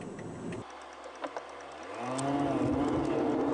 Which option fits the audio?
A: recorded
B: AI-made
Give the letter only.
A